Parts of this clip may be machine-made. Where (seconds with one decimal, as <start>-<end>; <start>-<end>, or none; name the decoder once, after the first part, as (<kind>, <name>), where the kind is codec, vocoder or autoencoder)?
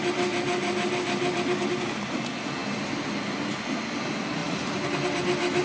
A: none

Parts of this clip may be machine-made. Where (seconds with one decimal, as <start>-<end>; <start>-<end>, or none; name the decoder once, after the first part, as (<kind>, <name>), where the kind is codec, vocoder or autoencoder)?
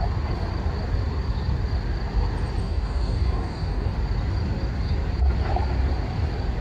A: 2.6-3.9 (codec, DAC)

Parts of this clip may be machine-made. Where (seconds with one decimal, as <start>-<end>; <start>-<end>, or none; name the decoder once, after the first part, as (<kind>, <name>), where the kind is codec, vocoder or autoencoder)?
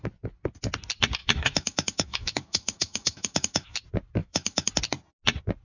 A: 1.2-3.8 (autoencoder, DAC-VAE); 4.2-4.7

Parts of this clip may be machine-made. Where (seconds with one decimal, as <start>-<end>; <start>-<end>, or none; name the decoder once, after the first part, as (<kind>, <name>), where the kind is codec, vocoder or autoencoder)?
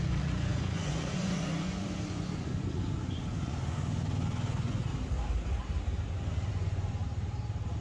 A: 0.0-4.9 (vocoder, Vocos); 6.5-7.0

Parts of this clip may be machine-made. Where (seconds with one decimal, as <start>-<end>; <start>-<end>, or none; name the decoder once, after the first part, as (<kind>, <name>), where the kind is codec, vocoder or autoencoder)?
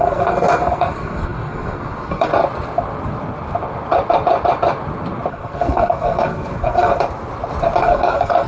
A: 0.0-2.3 (codec, SNAC); 5.3-6.9; 7.8-8.5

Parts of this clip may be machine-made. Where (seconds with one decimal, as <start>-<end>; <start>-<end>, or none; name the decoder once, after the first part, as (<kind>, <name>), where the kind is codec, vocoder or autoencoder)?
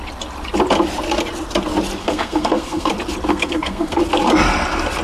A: 2.0-2.9 (codec, SNAC); 3.3-4.0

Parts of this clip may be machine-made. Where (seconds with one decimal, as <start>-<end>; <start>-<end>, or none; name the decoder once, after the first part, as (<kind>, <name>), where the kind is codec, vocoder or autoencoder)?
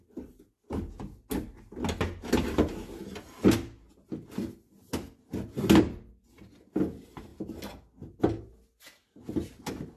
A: none